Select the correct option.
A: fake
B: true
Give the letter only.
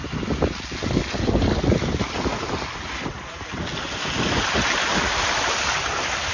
B